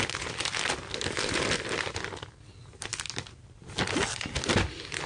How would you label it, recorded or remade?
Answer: recorded